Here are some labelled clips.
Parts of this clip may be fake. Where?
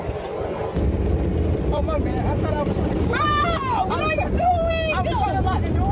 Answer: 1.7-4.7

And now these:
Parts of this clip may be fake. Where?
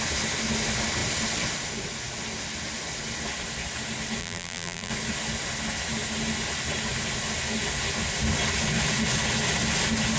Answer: 4.2-4.9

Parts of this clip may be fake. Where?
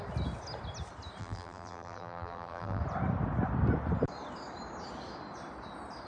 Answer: 1.2-2.8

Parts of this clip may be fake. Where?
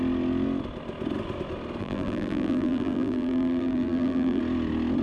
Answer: 1.8-4.4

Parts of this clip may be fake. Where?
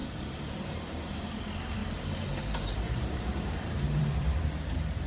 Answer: 0.0-1.2; 1.8-5.1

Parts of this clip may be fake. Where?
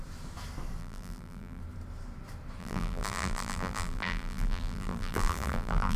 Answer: 0.8-1.6; 2.6-6.0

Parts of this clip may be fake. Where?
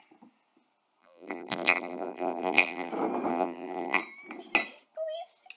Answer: 1.0-2.9; 3.3-4.0